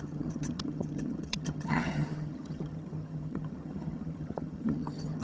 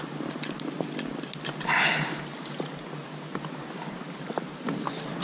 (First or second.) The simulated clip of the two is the first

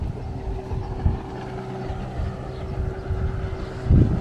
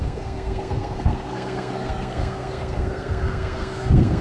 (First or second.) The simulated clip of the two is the second